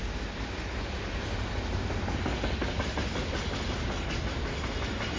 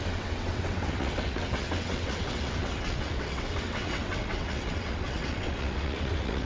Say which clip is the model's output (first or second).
second